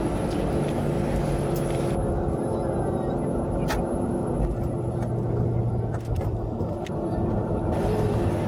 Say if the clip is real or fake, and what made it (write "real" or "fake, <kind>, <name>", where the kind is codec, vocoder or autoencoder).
real